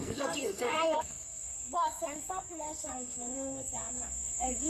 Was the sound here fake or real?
fake